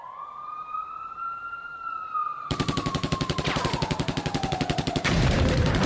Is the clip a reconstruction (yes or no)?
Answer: yes